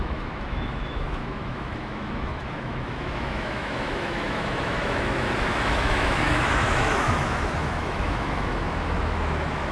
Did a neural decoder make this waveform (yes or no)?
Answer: yes